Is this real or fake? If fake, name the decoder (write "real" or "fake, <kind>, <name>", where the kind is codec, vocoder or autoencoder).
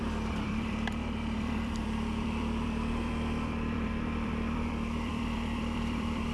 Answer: fake, vocoder, BigVGAN v2